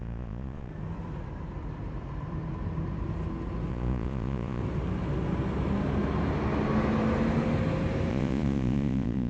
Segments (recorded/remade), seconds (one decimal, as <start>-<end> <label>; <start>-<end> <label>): 0.0-0.7 remade; 0.7-3.7 recorded; 3.7-4.6 remade; 4.6-8.1 recorded; 8.1-9.3 remade